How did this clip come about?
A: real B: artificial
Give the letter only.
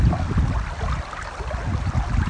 B